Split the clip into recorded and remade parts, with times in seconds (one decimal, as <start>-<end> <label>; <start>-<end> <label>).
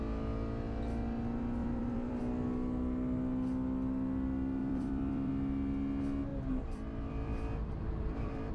0.0-1.6 recorded; 1.6-2.2 remade; 2.2-4.6 recorded; 4.6-5.3 remade; 5.3-6.3 recorded; 6.3-8.5 remade